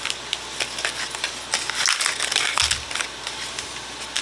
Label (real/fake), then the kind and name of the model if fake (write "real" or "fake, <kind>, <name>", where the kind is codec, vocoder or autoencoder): real